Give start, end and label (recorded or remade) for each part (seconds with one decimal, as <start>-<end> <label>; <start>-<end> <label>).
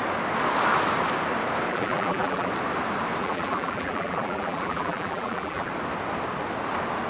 0.0-1.7 recorded; 1.7-2.5 remade; 2.5-3.2 recorded; 3.2-5.7 remade; 5.7-7.1 recorded